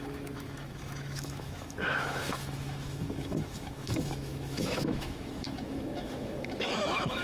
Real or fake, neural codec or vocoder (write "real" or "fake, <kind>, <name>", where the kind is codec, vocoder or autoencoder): fake, autoencoder, DAC-VAE